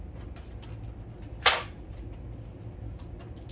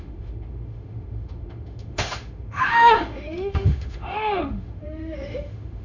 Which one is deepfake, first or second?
second